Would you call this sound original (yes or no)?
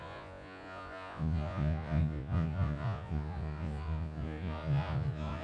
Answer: no